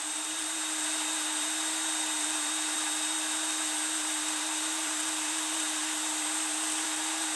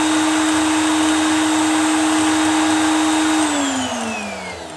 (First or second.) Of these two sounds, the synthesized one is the first